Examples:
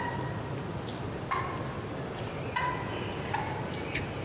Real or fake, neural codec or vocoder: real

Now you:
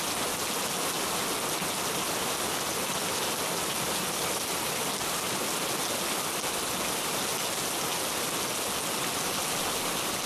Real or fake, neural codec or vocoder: real